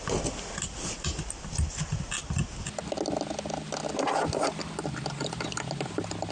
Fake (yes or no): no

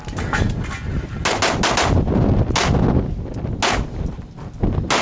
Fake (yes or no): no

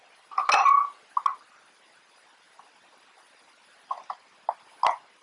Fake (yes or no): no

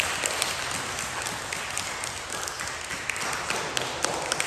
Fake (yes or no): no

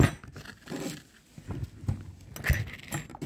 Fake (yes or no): no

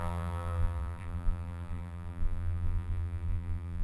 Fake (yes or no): yes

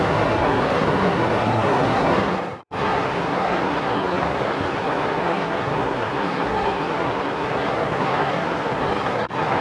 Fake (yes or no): yes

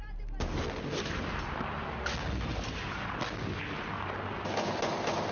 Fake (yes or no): no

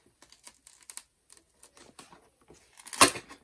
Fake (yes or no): no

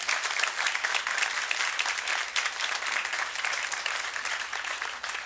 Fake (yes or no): no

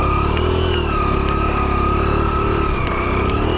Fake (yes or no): no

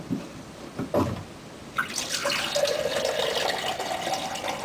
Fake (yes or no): no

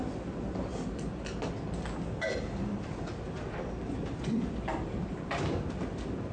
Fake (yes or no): no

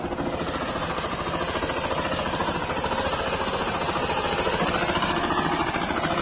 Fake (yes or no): no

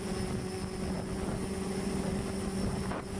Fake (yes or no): no